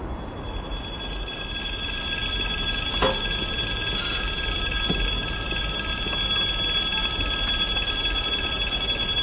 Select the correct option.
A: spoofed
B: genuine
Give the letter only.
B